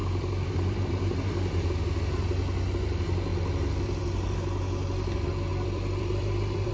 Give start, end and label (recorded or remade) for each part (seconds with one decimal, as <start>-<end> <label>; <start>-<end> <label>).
0.0-1.7 remade; 1.7-3.3 recorded; 3.3-4.3 remade; 4.3-5.5 recorded; 5.5-6.7 remade